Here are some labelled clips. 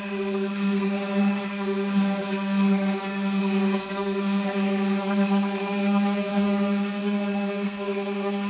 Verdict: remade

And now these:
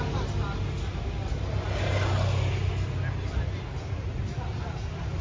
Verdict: recorded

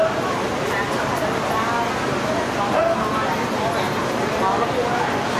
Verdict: recorded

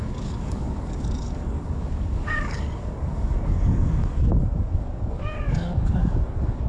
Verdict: remade